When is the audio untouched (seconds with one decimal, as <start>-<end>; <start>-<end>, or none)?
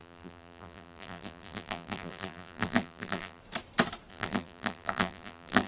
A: 3.4-4.1